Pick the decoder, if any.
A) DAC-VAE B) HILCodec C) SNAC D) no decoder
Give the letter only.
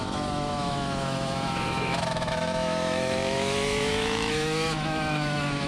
A